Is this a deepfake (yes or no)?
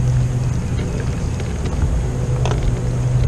no